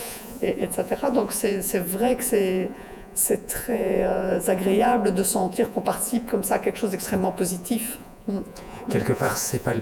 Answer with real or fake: fake